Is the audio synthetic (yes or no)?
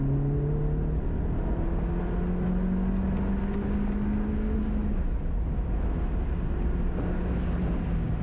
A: no